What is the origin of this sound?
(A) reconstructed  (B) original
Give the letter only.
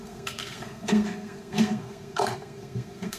A